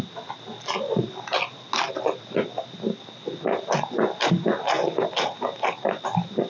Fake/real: real